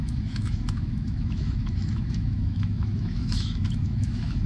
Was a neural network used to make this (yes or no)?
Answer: yes